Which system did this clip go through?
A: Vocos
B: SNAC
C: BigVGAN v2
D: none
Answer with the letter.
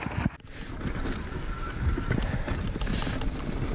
D